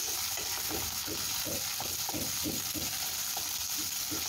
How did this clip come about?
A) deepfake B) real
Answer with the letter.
B